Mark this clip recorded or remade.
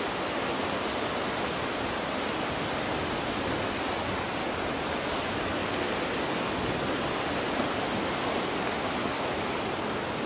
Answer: recorded